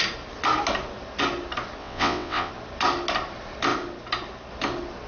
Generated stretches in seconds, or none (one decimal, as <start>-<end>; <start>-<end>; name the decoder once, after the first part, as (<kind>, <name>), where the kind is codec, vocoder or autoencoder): 1.8-2.5 (vocoder, WaveNeXt)

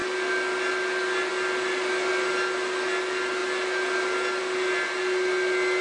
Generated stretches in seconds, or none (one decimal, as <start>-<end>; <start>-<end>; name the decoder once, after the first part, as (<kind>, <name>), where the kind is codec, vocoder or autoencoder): none

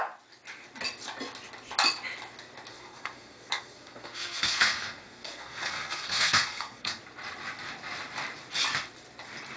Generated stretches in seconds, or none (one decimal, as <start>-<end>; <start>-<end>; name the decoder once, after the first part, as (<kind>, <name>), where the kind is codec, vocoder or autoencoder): 2.7-7.0 (codec, SNAC)

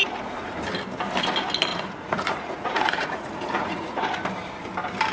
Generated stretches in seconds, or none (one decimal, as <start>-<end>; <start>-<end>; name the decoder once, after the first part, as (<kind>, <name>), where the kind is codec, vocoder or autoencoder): 1.7-4.0 (vocoder, Vocos)